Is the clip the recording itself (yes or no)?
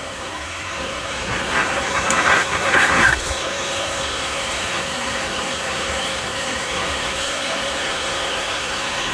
no